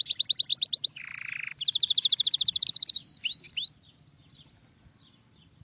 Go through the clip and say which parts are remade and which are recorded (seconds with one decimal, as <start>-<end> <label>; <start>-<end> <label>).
0.0-5.6 recorded